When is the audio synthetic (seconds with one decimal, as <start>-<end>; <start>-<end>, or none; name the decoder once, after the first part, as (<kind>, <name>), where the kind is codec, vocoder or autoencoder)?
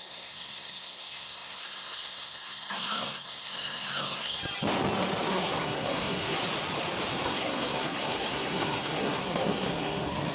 0.0-4.4 (codec, SNAC); 5.3-6.4; 7.1-10.3